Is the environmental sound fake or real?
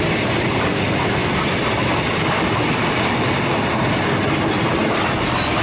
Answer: real